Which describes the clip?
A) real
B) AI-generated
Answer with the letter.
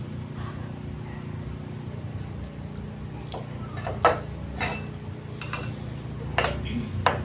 A